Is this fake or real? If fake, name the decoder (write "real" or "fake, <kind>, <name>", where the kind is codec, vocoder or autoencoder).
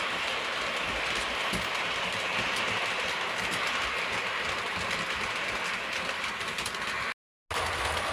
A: real